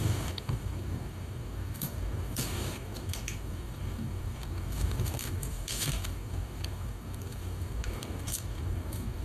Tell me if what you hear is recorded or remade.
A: remade